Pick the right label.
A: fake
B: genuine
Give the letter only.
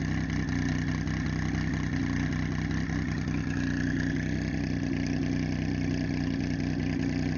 B